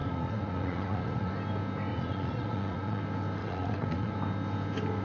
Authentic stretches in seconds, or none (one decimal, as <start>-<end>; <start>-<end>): 1.3-1.9; 3.0-3.4; 4.1-5.0